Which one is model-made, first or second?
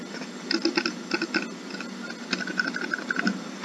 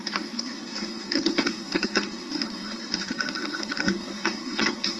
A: second